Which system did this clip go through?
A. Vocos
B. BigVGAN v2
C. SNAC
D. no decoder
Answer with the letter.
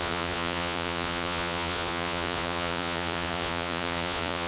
A